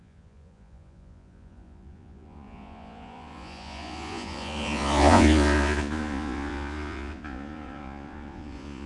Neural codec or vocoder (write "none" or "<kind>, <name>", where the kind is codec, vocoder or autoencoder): vocoder, Vocos